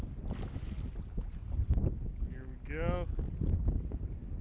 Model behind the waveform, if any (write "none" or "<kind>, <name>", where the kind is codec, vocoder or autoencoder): none